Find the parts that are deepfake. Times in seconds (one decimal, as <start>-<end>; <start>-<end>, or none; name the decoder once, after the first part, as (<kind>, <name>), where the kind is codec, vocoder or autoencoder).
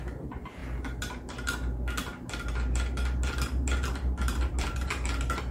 none